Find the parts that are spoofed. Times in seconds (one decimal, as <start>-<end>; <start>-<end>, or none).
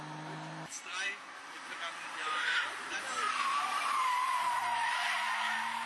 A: 2.2-3.4; 4.0-5.2